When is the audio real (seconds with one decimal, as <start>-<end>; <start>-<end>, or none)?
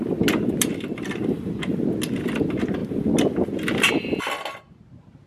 0.0-5.3